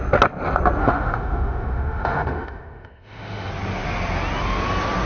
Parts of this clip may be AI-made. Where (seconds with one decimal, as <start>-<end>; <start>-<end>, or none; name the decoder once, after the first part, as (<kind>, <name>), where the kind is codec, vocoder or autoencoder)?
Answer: 0.8-3.5 (autoencoder, DAC-VAE)

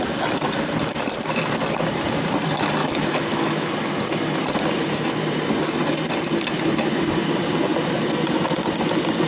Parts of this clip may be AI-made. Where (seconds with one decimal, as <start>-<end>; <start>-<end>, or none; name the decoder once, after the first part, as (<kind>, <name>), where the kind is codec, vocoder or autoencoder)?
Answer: 2.8-3.7 (autoencoder, DAC-VAE)

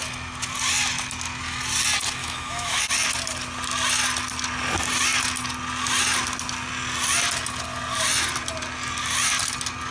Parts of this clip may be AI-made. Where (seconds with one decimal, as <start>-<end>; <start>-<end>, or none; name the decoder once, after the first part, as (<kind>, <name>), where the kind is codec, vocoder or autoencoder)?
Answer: 2.2-2.8 (autoencoder, DAC-VAE)